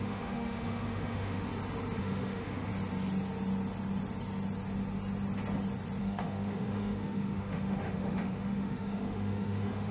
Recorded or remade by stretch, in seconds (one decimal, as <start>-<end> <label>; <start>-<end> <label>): 0.0-1.5 remade; 1.5-2.0 recorded; 2.0-2.7 remade; 2.7-6.0 recorded; 6.0-9.9 remade